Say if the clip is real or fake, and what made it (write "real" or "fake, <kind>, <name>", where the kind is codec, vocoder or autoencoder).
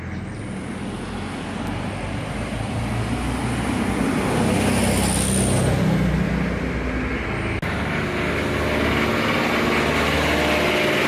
real